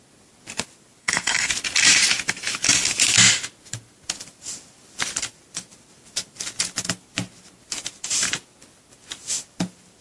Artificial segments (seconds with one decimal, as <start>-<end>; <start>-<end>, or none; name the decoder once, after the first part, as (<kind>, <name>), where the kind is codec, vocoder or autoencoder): 1.0-1.5 (codec, SNAC)

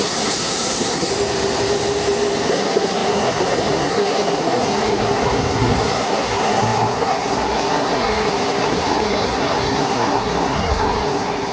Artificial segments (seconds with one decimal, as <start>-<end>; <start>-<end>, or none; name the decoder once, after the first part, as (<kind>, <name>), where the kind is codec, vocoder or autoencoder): 0.0-1.1 (codec, SNAC); 2.5-11.5

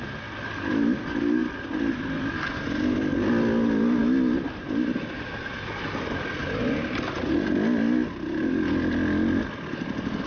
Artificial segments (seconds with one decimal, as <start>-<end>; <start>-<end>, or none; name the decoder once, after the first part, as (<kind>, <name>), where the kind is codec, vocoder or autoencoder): none